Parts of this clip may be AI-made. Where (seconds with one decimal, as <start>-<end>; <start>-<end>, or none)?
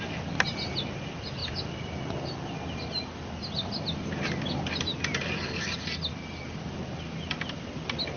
1.4-2.0; 3.4-4.1